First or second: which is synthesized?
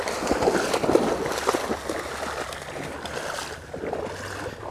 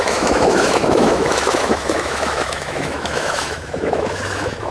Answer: second